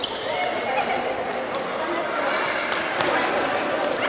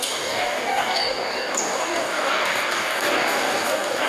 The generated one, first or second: second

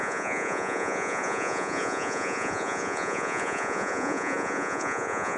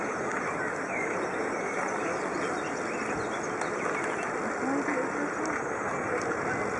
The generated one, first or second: first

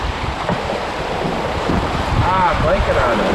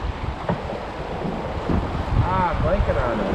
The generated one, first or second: first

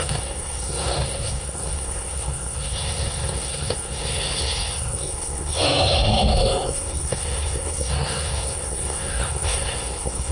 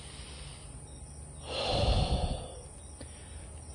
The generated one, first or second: first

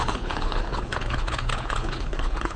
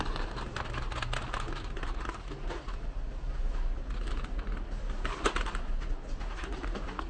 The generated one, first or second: first